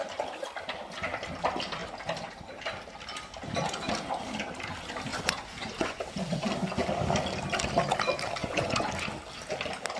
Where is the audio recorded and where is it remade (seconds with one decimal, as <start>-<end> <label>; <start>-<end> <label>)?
0.0-5.1 recorded; 5.1-6.0 remade; 6.0-8.4 recorded; 8.4-8.9 remade; 8.9-10.0 recorded